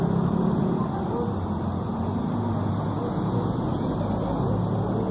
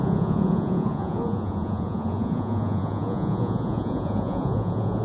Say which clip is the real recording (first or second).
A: first